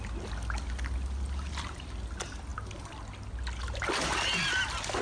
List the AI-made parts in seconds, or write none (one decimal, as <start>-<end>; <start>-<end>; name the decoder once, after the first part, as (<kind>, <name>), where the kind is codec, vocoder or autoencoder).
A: none